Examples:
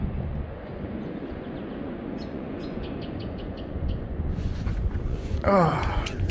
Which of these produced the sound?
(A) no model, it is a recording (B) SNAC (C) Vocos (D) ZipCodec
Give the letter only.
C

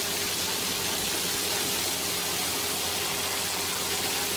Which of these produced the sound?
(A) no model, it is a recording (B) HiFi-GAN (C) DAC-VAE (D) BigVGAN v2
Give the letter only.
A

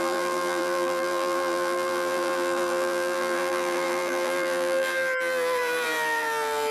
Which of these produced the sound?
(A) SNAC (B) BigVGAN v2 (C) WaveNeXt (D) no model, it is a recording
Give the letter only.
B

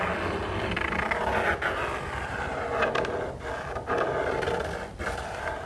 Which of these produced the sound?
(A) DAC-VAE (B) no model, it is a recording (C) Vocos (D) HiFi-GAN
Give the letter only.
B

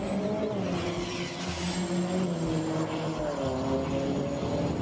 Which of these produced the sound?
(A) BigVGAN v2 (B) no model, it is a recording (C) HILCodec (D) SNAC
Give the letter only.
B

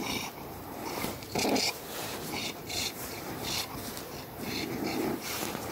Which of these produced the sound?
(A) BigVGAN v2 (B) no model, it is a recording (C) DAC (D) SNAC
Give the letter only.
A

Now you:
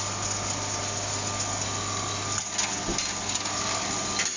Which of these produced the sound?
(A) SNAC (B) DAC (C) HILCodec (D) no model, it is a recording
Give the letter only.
D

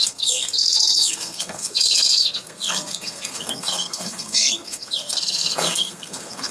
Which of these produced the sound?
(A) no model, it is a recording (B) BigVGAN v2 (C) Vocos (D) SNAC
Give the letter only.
D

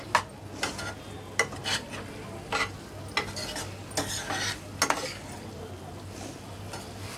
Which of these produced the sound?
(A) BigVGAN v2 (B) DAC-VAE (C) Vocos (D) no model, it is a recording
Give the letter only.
D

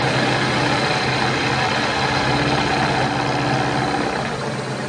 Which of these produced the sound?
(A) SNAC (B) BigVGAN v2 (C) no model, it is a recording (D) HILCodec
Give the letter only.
C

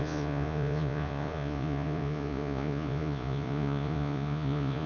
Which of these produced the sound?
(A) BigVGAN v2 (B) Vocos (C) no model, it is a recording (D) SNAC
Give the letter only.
B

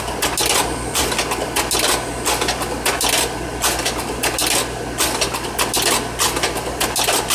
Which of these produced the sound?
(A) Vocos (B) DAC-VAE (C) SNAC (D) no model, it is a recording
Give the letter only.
D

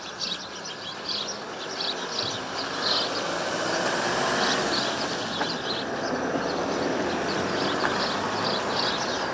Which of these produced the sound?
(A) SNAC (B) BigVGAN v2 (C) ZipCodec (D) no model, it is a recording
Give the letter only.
D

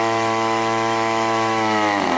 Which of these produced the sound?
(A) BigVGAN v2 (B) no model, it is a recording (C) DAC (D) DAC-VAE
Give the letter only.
D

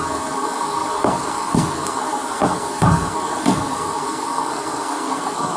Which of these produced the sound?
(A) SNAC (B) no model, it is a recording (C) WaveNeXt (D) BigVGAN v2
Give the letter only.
A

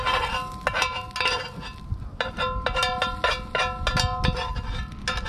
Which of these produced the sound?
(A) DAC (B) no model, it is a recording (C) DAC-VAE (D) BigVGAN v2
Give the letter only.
B